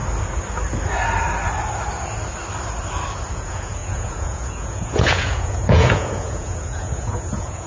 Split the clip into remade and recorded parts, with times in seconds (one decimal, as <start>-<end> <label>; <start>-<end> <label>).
0.0-3.3 recorded; 3.3-7.7 remade